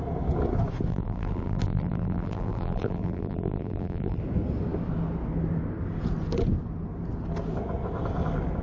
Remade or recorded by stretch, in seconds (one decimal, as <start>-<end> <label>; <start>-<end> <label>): 0.0-0.9 recorded; 0.9-4.2 remade; 4.2-8.6 recorded